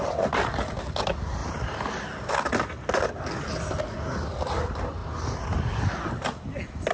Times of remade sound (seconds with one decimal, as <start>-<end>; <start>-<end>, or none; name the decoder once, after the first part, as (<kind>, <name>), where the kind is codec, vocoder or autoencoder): none